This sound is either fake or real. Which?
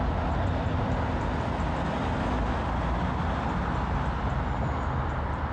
real